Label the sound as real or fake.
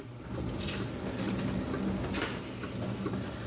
real